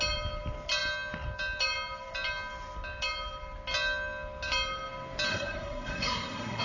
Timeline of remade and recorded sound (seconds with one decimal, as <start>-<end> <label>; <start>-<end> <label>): 0.0-5.3 recorded; 5.3-6.6 remade